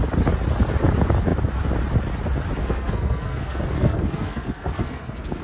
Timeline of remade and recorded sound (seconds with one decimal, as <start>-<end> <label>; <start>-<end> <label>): 0.0-2.6 recorded; 2.6-5.4 remade